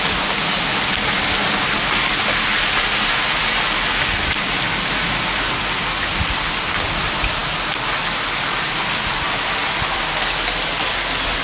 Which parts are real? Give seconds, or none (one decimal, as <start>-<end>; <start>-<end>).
0.0-11.4